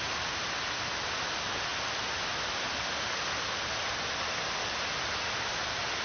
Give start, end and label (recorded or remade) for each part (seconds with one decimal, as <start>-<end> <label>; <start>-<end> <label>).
0.0-6.0 recorded